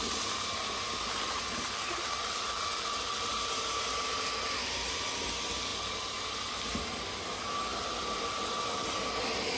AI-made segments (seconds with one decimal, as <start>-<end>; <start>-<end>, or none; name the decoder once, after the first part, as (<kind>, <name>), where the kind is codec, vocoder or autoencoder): 2.2-3.3 (vocoder, BigVGAN v2); 7.7-8.5